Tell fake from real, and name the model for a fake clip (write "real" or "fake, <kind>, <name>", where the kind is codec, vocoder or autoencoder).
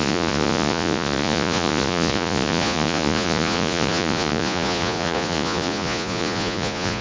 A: fake, vocoder, Vocos